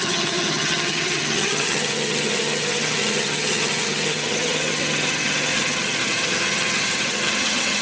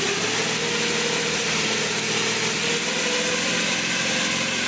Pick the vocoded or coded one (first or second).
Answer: first